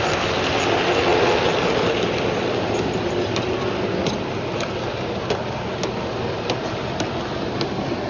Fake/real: real